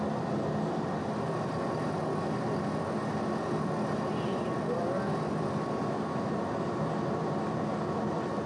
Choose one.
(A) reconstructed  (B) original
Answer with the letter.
B